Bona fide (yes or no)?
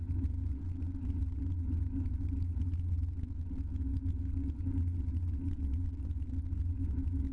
yes